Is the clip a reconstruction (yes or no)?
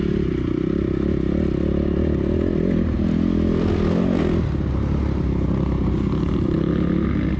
no